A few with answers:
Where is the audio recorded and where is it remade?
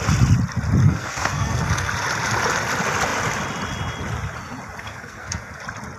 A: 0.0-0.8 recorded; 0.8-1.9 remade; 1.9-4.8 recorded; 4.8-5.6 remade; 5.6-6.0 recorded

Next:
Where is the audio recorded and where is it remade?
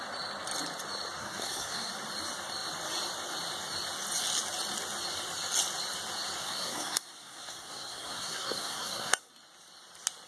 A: 0.0-1.2 recorded; 1.2-1.9 remade; 1.9-6.4 recorded; 6.4-9.3 remade; 9.3-10.3 recorded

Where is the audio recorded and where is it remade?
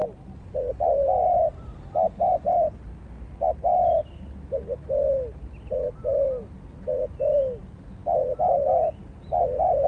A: 0.0-9.9 recorded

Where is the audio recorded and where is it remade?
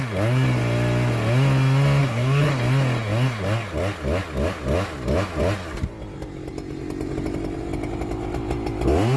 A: 0.0-2.0 recorded; 2.0-2.5 remade; 2.5-9.2 recorded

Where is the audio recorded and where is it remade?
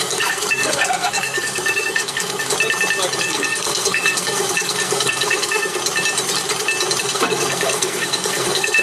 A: 0.0-2.5 remade; 2.5-3.2 recorded; 3.2-5.8 remade; 5.8-7.0 recorded; 7.0-8.8 remade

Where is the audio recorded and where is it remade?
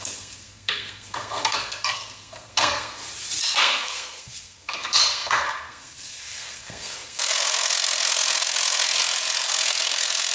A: 0.0-3.0 remade; 3.0-3.6 recorded; 3.6-9.0 remade; 9.0-9.5 recorded; 9.5-10.3 remade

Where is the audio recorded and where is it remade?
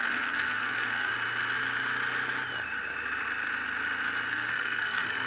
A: 0.0-1.1 remade; 1.1-4.3 recorded; 4.3-5.3 remade